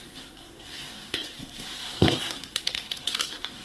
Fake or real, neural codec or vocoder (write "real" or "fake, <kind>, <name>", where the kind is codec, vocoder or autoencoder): fake, codec, SNAC